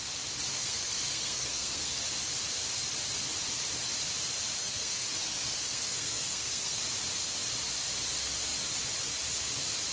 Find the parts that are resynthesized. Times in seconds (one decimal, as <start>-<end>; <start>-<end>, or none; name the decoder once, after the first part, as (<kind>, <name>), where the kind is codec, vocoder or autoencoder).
0.5-2.0 (codec, SNAC); 4.6-6.8